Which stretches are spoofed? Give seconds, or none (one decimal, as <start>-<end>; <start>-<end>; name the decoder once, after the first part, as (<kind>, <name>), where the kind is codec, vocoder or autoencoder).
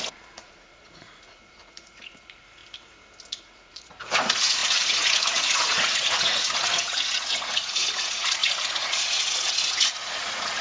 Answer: 0.0-2.6 (vocoder, Vocos); 3.4-10.6